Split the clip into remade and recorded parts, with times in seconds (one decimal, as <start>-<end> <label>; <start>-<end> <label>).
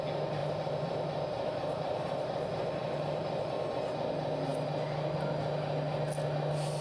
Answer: 0.0-0.4 recorded; 0.4-3.5 remade; 3.5-6.8 recorded